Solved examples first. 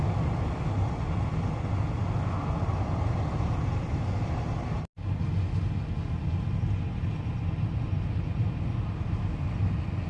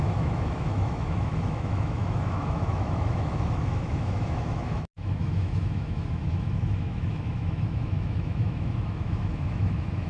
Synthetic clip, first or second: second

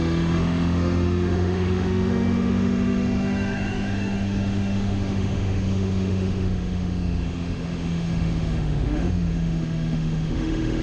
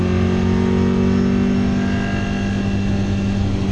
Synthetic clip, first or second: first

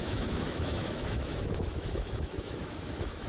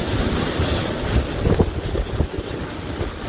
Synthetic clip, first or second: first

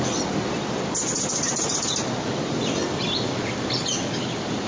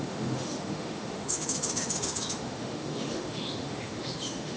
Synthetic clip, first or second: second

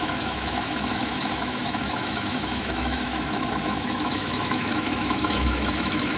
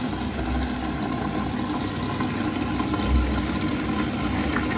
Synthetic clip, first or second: first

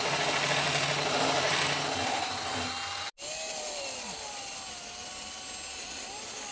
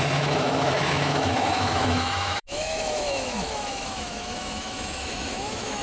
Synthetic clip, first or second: second